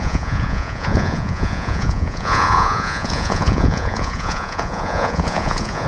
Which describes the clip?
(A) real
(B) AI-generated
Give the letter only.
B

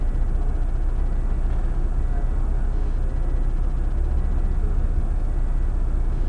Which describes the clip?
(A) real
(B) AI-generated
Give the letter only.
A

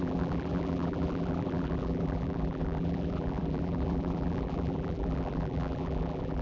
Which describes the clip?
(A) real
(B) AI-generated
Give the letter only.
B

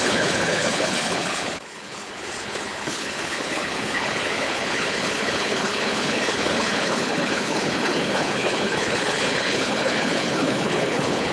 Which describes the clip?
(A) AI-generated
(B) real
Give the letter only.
A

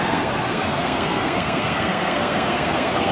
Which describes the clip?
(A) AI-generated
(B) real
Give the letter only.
A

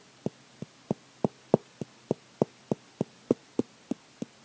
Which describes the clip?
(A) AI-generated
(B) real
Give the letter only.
B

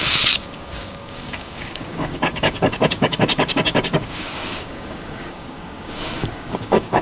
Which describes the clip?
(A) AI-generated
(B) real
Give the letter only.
A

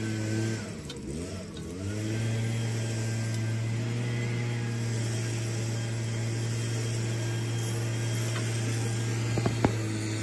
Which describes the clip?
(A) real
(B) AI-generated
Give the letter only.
A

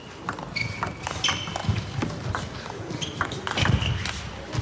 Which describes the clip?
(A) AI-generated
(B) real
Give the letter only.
B